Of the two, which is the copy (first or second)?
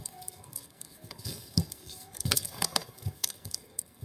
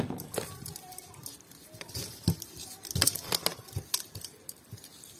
first